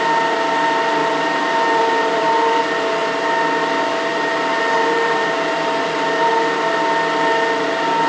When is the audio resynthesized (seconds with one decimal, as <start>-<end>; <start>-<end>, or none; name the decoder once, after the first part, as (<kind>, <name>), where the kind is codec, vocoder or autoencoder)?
1.0-2.6 (vocoder, BigVGAN v2); 4.1-6.3